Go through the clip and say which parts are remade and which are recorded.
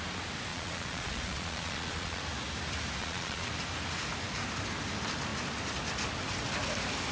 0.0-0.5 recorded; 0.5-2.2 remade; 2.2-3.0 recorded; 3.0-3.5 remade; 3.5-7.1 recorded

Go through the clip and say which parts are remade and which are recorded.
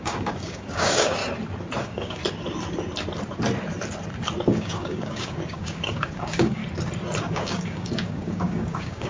0.0-1.2 remade; 1.2-1.8 recorded; 1.8-2.2 remade; 2.2-4.5 recorded; 4.5-6.6 remade; 6.6-7.2 recorded; 7.2-9.1 remade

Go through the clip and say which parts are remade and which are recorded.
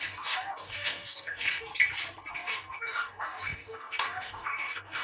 0.0-1.7 remade; 1.7-2.3 recorded; 2.3-5.0 remade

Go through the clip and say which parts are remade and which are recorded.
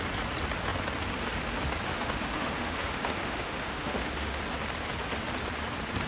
0.0-1.9 recorded; 1.9-4.4 remade; 4.4-6.1 recorded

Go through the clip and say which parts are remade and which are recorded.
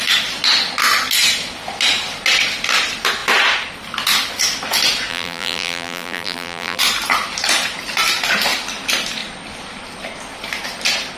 0.0-5.1 recorded; 5.1-6.8 remade; 6.8-11.2 recorded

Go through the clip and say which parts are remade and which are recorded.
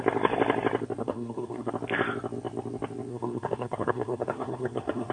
0.0-1.0 recorded; 1.0-1.7 remade; 1.7-3.1 recorded; 3.1-5.1 remade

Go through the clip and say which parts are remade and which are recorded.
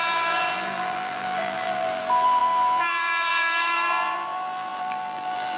0.0-5.6 remade